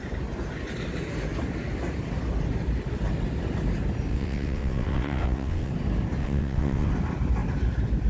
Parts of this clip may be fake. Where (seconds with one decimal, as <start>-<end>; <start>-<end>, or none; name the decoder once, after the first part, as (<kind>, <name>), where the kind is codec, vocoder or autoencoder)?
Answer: 4.1-5.7 (vocoder, WaveNeXt); 6.2-6.9